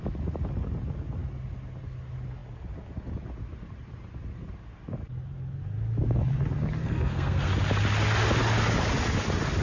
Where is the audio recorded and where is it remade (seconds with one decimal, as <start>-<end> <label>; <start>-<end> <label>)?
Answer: 0.0-6.8 recorded; 6.8-7.5 remade; 7.5-9.6 recorded